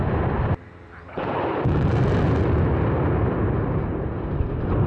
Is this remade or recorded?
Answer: recorded